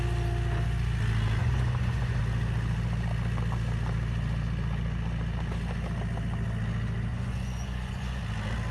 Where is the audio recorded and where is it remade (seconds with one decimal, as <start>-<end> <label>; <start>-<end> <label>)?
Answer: 0.0-1.4 recorded; 1.4-2.2 remade; 2.2-7.1 recorded; 7.1-8.2 remade; 8.2-8.7 recorded

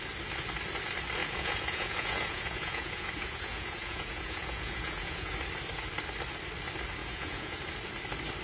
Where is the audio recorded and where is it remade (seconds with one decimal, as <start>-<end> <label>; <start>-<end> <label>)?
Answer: 0.0-1.2 recorded; 1.2-5.4 remade; 5.4-7.0 recorded; 7.0-7.6 remade; 7.6-8.4 recorded

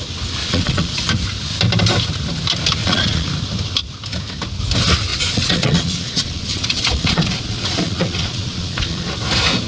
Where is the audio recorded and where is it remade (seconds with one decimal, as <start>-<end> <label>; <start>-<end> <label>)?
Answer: 0.0-0.4 recorded; 0.4-1.0 remade; 1.0-2.8 recorded; 2.8-3.3 remade; 3.3-5.1 recorded; 5.1-9.1 remade; 9.1-9.7 recorded

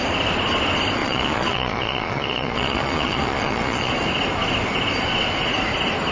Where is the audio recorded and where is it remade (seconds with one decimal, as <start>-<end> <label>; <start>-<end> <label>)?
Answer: 0.0-1.0 recorded; 1.0-3.9 remade; 3.9-6.1 recorded

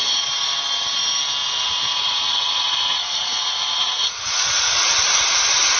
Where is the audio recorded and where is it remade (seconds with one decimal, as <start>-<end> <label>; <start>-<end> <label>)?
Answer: 0.0-1.4 recorded; 1.4-4.9 remade; 4.9-5.8 recorded